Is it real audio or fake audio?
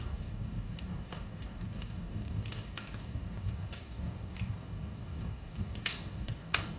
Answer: fake